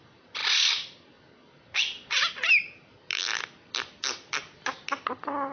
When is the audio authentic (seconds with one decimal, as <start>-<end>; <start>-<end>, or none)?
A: 0.0-5.5